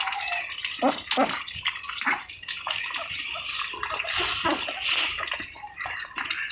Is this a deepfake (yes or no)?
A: no